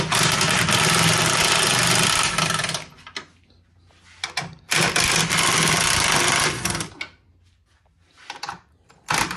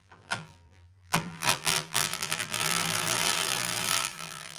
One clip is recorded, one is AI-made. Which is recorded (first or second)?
first